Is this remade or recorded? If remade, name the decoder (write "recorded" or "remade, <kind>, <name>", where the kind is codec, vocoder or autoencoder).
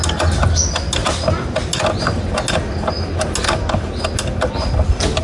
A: recorded